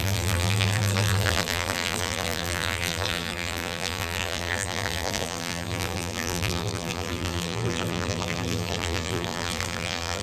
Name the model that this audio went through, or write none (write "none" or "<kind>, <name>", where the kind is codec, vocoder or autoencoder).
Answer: vocoder, BigVGAN v2